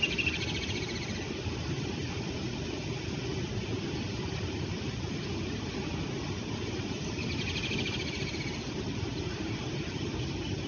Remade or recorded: recorded